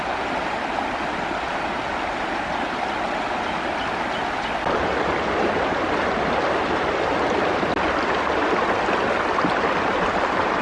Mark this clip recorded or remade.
recorded